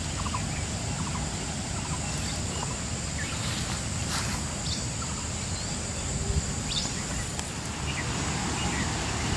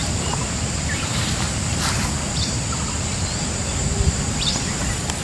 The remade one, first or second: second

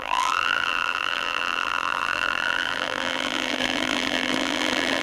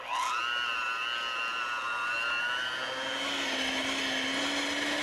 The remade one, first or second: first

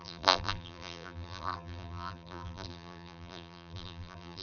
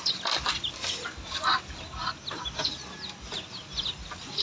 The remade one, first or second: first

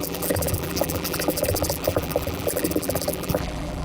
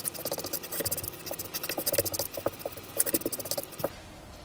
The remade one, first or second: first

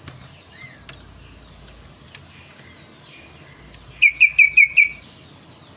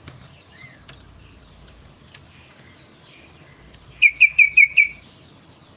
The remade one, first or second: second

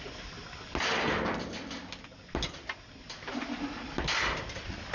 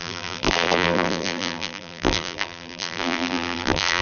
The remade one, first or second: second